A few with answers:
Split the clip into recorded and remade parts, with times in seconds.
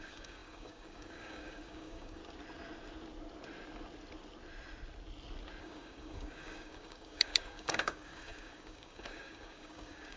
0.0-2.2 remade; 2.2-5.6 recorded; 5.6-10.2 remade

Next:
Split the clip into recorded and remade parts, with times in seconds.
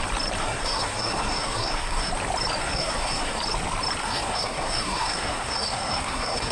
0.0-0.4 recorded; 0.4-2.1 remade; 2.1-2.6 recorded; 2.6-3.4 remade; 3.4-4.0 recorded; 4.0-6.5 remade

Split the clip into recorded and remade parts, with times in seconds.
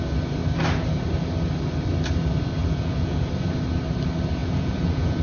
0.0-2.6 recorded; 2.6-3.3 remade; 3.3-4.4 recorded; 4.4-5.2 remade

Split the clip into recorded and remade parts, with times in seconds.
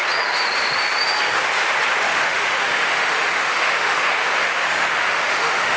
0.0-2.1 recorded; 2.1-5.8 remade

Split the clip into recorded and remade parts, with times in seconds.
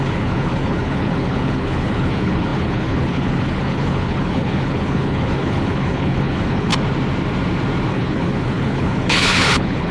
0.0-6.7 remade; 6.7-7.9 recorded; 7.9-9.9 remade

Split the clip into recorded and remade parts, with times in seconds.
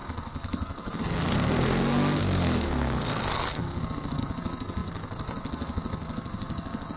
0.0-7.0 remade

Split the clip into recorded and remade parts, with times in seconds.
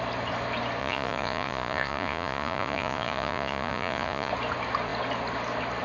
0.0-0.8 recorded; 0.8-4.3 remade; 4.3-5.8 recorded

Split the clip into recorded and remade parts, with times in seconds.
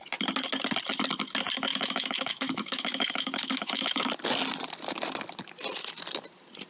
0.0-1.7 recorded; 1.7-4.1 remade; 4.1-6.7 recorded